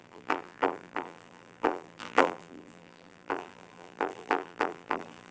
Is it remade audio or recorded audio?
remade